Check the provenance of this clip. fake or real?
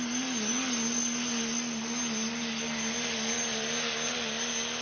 real